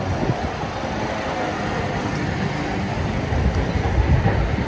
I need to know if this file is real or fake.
real